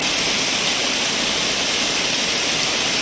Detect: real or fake fake